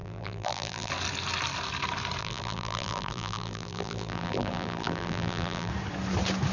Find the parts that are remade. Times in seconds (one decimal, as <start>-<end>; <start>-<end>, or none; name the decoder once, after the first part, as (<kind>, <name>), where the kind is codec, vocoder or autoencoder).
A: 0.0-0.9 (vocoder, BigVGAN v2); 2.2-5.7